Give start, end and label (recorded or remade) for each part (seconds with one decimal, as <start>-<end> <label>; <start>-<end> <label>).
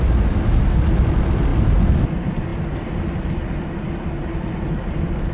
0.0-5.3 recorded